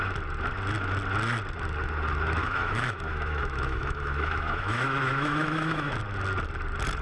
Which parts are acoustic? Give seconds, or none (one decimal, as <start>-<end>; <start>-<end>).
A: 0.0-2.4; 5.9-7.0